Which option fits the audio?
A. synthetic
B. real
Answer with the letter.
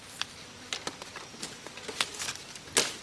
B